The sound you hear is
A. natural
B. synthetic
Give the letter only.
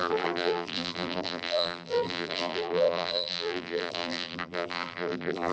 B